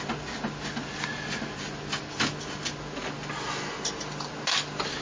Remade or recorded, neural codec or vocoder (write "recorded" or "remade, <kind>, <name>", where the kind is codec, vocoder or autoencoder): recorded